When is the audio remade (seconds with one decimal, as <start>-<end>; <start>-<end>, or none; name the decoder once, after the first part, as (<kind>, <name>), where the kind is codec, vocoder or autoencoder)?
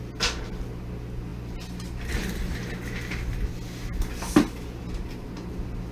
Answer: none